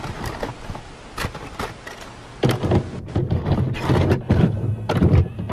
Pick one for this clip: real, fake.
real